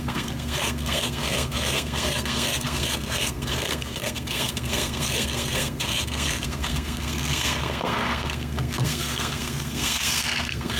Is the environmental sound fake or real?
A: fake